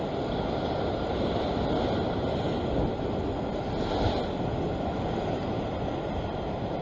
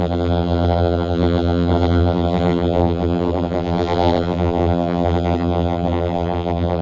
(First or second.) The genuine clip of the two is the first